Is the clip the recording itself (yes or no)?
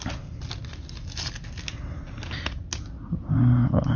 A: yes